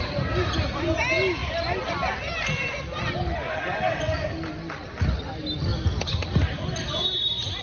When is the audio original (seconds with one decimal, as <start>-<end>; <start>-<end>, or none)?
0.0-7.6